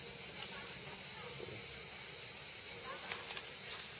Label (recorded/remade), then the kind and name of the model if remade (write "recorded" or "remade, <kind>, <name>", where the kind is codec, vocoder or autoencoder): recorded